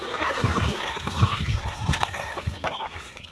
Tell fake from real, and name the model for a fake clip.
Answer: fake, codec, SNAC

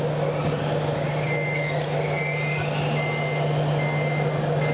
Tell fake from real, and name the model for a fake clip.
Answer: real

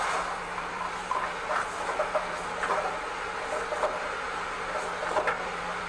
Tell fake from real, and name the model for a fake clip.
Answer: real